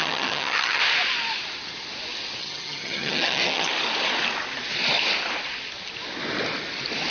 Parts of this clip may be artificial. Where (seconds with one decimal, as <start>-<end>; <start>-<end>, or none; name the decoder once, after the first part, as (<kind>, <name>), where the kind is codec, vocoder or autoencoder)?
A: 0.0-0.8 (vocoder, HiFi-GAN); 2.4-3.7

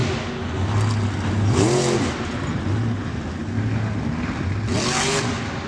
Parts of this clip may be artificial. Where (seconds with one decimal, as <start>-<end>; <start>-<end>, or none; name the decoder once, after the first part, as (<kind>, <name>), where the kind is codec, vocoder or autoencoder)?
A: none